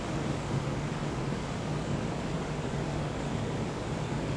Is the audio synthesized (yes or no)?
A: yes